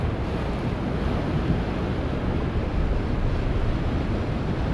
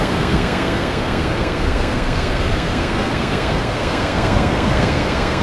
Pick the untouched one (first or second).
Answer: first